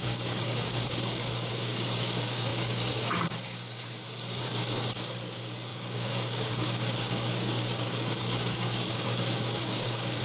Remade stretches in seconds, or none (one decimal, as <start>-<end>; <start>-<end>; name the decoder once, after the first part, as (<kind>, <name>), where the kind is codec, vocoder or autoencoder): 0.0-10.2 (codec, DAC)